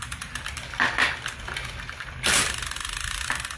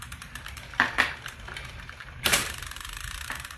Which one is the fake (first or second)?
second